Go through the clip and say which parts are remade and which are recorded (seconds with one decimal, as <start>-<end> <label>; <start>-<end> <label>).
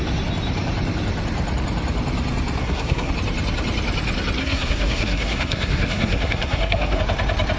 0.0-2.6 recorded; 2.6-3.1 remade; 3.1-4.4 recorded; 4.4-7.0 remade; 7.0-7.6 recorded